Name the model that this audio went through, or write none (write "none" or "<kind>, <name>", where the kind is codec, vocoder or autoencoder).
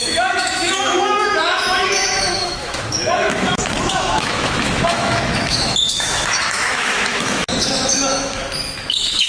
autoencoder, DAC-VAE